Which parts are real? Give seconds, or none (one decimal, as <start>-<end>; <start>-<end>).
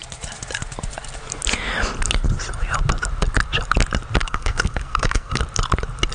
0.0-4.2; 5.4-6.1